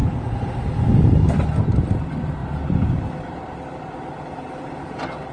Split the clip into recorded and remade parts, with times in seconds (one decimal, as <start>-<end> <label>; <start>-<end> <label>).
0.0-5.3 recorded